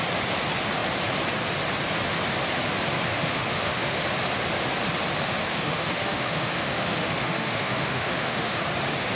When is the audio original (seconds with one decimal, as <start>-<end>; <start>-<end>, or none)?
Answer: 0.0-3.1; 4.0-5.5; 8.6-9.2